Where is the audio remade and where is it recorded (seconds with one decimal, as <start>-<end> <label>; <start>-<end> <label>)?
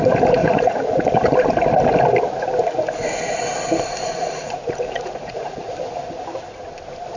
0.0-0.4 recorded; 0.4-1.1 remade; 1.1-4.0 recorded; 4.0-5.7 remade; 5.7-7.2 recorded